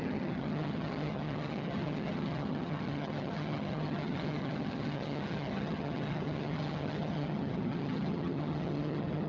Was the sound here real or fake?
fake